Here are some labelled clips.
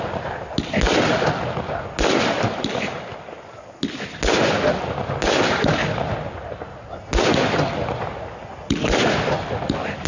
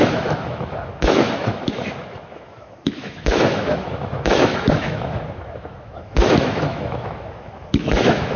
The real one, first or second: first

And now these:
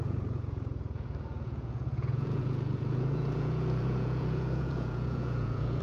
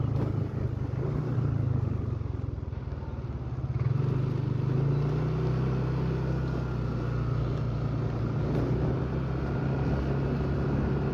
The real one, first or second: second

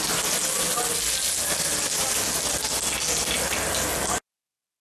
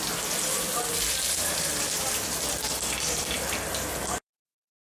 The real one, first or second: first